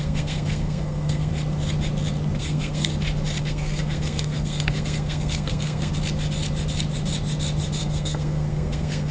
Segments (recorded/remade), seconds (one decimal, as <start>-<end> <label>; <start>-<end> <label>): 0.0-1.3 remade; 1.3-2.4 recorded; 2.4-2.9 remade; 2.9-3.4 recorded; 3.4-5.9 remade; 5.9-7.8 recorded; 7.8-9.1 remade